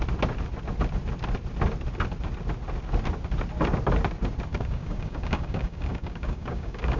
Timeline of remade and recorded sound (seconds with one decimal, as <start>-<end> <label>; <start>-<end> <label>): 0.0-4.5 recorded; 4.5-7.0 remade